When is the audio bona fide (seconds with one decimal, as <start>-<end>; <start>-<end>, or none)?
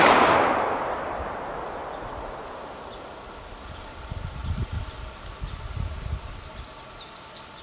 0.0-7.6